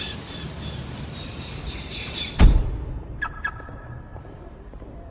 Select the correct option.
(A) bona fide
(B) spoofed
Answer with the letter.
B